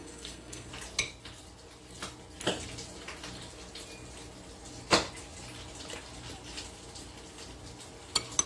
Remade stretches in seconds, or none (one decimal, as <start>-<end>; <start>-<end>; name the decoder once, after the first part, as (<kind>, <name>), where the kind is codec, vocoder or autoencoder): 0.0-0.7 (codec, SNAC)